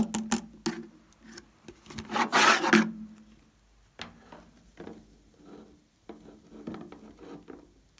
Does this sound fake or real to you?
real